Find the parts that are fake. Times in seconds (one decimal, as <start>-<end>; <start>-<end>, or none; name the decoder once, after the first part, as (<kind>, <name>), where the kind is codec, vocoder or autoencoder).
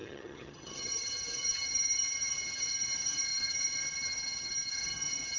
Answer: 0.0-5.4 (vocoder, HiFi-GAN)